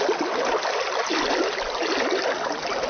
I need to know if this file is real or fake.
real